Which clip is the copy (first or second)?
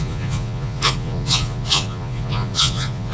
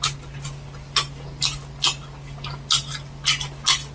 first